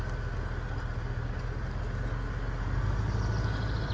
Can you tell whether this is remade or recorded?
recorded